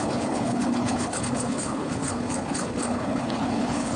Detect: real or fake fake